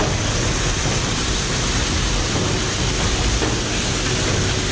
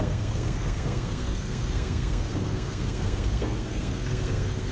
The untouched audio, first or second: first